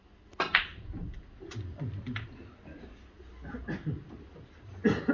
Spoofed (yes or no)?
no